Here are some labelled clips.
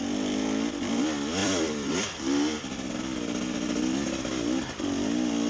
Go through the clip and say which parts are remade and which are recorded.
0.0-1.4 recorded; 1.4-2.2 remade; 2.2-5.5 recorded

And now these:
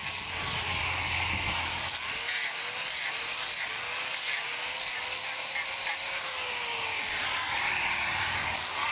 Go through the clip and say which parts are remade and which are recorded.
0.0-0.7 recorded; 0.7-1.9 remade; 1.9-3.6 recorded; 3.6-4.3 remade; 4.3-8.3 recorded; 8.3-8.9 remade

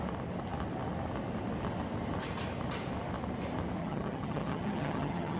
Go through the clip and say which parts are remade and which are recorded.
0.0-3.8 recorded; 3.8-5.4 remade

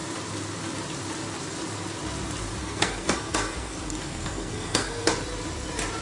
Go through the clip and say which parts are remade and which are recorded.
0.0-2.6 recorded; 2.6-5.1 remade; 5.1-6.0 recorded

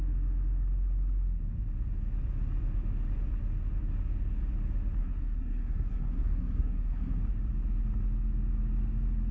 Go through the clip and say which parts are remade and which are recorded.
0.0-5.0 recorded; 5.0-7.2 remade; 7.2-9.3 recorded

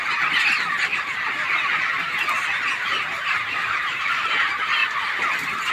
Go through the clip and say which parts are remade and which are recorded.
0.0-0.9 recorded; 0.9-4.3 remade; 4.3-5.7 recorded